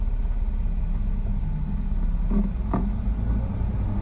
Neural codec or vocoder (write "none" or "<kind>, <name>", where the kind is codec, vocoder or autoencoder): none